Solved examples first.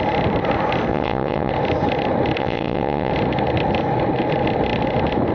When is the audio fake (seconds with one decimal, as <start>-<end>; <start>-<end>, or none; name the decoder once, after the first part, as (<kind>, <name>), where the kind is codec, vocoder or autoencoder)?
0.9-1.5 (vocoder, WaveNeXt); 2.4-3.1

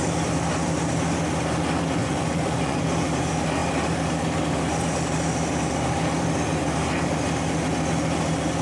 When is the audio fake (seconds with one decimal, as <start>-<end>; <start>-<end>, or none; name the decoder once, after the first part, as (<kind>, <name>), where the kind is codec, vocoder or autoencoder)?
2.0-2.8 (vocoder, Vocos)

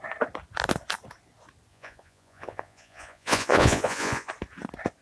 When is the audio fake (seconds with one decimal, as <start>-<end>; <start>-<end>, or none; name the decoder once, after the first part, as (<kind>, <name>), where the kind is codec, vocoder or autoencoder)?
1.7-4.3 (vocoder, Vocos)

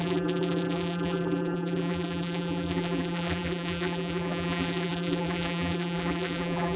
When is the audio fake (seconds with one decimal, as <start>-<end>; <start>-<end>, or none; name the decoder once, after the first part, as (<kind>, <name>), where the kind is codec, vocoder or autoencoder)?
0.0-6.8 (vocoder, BigVGAN v2)